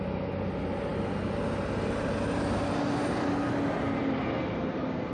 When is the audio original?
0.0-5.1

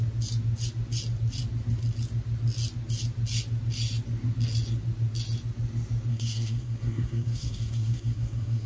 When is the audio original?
0.0-6.1

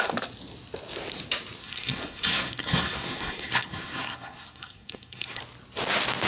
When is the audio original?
0.0-1.6; 5.4-6.3

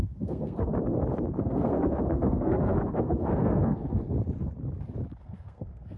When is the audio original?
0.7-1.4; 4.0-5.2

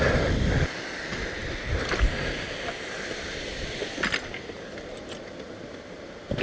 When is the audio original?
0.0-6.4